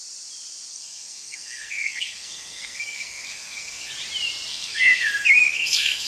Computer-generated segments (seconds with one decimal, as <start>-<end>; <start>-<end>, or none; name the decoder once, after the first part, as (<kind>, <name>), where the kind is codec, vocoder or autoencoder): 0.7-3.9 (codec, SNAC); 4.5-6.1